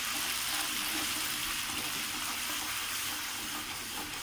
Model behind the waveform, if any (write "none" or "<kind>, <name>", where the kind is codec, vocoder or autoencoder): vocoder, BigVGAN v2